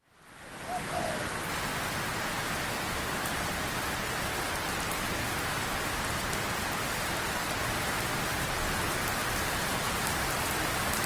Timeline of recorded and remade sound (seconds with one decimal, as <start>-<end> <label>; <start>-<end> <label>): 0.0-11.1 recorded